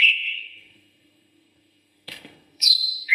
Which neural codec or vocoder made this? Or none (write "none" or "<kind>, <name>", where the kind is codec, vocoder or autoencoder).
codec, SNAC